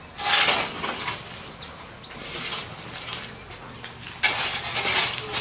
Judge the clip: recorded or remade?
recorded